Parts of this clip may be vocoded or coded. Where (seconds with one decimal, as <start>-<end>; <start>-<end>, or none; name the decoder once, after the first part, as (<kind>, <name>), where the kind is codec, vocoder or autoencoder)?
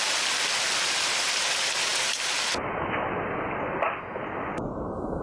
none